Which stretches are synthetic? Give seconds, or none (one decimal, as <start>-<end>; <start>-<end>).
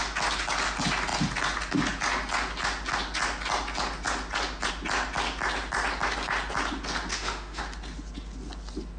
7.1-7.6